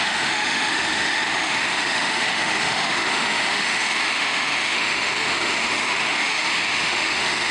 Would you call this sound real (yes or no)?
no